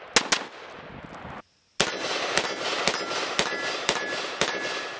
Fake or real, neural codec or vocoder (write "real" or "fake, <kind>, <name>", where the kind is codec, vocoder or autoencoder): real